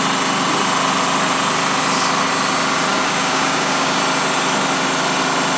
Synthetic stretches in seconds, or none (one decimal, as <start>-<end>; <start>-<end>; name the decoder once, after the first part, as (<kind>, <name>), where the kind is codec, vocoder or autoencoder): 2.9-4.0 (codec, DAC)

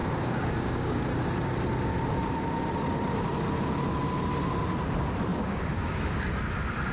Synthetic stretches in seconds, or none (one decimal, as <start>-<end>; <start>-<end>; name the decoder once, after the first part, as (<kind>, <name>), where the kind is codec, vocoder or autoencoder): 0.0-1.0 (codec, DAC); 5.3-6.2

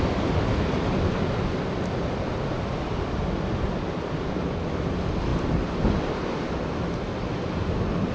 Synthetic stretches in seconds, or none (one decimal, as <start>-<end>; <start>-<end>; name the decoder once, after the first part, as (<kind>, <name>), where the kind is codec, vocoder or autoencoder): none

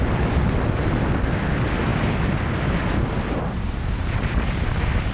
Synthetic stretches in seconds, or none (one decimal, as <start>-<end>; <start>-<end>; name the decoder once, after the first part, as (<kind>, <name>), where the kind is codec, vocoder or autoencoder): none

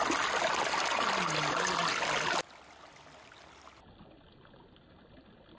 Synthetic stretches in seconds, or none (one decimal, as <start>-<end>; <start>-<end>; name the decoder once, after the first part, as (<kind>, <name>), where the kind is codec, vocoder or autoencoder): none